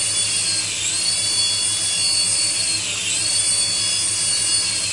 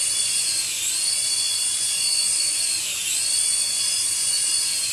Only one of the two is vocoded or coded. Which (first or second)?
second